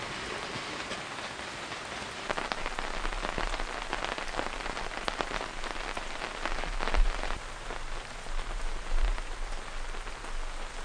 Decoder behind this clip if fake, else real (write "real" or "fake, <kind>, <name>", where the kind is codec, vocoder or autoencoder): real